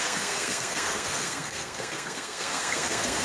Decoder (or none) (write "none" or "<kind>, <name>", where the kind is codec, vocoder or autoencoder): codec, SNAC